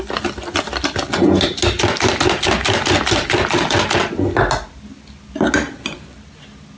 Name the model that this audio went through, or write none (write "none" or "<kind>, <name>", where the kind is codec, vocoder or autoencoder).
none